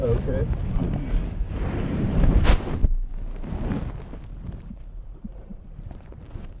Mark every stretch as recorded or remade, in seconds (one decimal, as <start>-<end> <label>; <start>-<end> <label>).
0.0-0.6 remade; 0.6-1.8 recorded; 1.8-2.8 remade; 2.8-4.6 recorded; 4.6-6.6 remade